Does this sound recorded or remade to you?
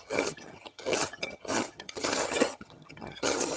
remade